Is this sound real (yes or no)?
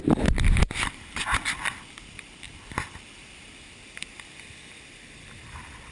no